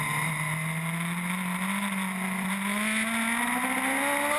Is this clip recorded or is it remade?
recorded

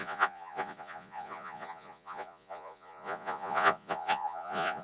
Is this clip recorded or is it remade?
remade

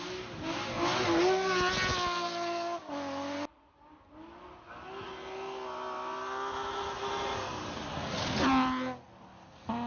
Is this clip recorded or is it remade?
recorded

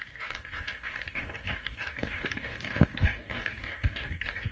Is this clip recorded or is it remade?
remade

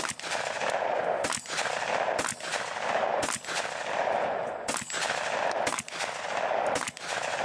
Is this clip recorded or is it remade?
recorded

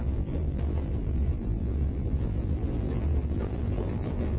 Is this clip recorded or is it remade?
remade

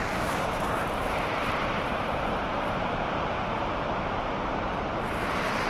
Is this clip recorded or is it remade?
remade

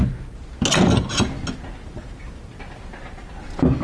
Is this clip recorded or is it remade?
recorded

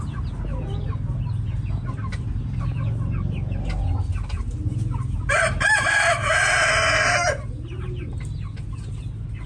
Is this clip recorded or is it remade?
recorded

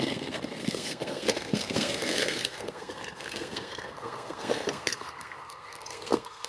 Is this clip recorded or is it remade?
remade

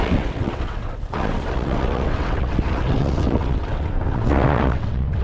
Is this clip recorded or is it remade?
remade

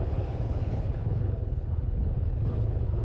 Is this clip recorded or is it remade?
remade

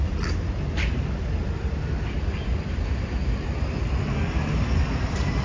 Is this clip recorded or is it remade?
recorded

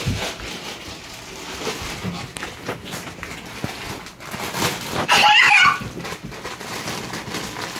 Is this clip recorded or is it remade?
recorded